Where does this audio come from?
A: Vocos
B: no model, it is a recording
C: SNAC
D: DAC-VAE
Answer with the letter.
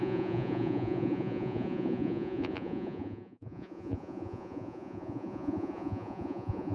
A